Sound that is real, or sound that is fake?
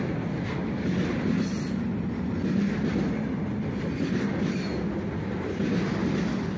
real